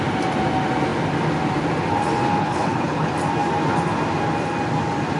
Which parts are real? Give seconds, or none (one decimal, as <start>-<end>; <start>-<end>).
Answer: 0.0-2.4; 3.1-5.2